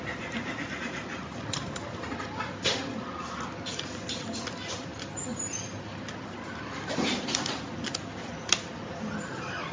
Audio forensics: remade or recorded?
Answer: recorded